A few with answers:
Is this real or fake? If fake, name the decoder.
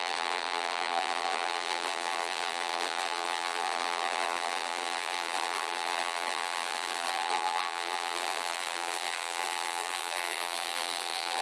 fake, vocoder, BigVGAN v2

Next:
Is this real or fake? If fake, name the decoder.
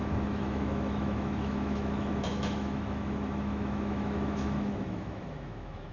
fake, autoencoder, DAC-VAE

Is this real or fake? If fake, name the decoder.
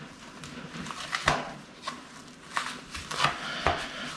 real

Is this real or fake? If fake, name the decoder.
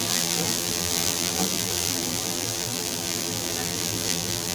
fake, vocoder, BigVGAN v2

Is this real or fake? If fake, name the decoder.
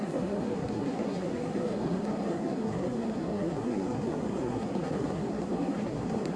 fake, codec, SNAC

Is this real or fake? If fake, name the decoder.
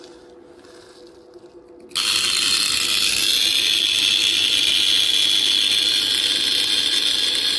real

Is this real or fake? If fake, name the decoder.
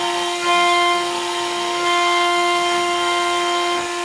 fake, codec, SNAC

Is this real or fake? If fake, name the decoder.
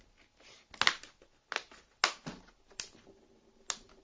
real